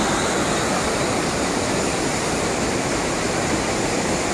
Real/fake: real